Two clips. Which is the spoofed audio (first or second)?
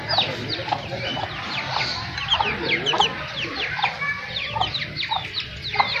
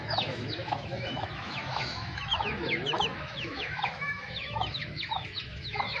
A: second